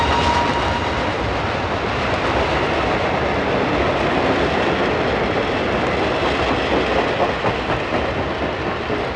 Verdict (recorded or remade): recorded